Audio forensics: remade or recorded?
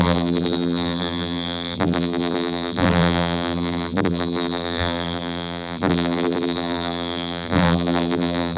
remade